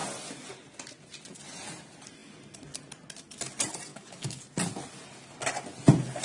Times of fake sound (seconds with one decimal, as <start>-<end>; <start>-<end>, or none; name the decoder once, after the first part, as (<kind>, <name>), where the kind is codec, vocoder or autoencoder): 3.9-4.4 (codec, DAC)